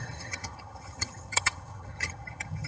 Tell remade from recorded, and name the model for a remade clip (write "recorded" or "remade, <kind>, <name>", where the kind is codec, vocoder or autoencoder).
remade, vocoder, HiFi-GAN